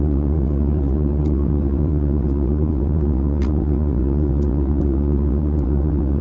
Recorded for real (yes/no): no